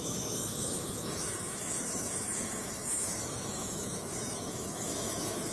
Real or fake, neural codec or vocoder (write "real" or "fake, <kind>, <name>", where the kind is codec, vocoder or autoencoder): fake, autoencoder, DAC-VAE